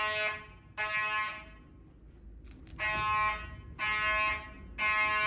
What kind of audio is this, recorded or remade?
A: recorded